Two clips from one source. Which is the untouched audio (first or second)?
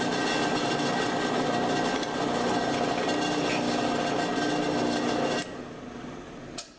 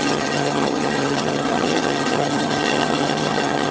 first